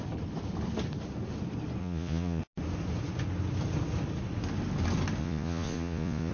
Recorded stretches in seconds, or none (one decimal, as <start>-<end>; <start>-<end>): 0.0-1.8; 2.4-5.2